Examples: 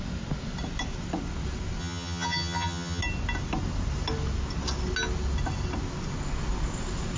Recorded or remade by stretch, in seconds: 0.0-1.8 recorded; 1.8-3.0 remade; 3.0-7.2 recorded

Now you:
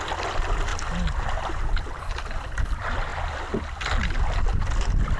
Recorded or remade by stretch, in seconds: 0.0-5.2 recorded

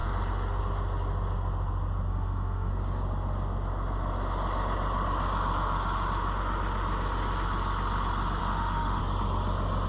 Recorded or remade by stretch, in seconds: 0.0-2.1 recorded; 2.1-2.7 remade; 2.7-8.4 recorded; 8.4-9.0 remade; 9.0-9.9 recorded

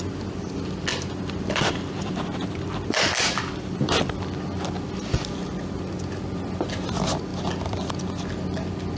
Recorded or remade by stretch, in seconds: 0.0-0.9 recorded; 0.9-4.1 remade; 4.1-7.3 recorded; 7.3-7.9 remade; 7.9-9.0 recorded

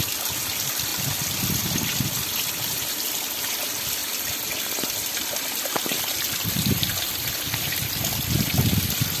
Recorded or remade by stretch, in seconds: 0.0-9.2 recorded

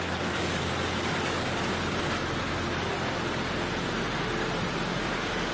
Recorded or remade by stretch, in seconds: 0.0-1.7 remade; 1.7-5.0 recorded; 5.0-5.5 remade